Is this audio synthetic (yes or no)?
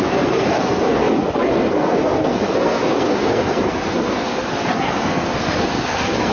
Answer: yes